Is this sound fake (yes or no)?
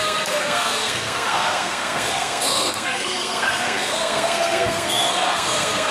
yes